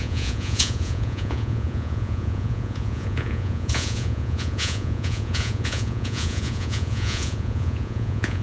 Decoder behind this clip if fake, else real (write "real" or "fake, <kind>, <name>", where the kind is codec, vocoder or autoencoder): fake, vocoder, Vocos